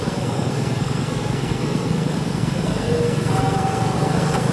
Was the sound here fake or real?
fake